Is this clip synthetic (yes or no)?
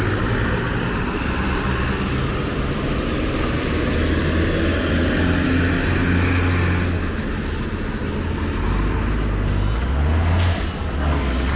no